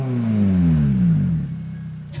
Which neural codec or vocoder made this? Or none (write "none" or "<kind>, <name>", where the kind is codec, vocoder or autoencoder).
none